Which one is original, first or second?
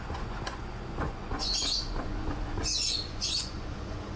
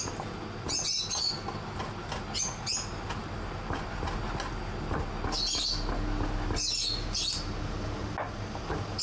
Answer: second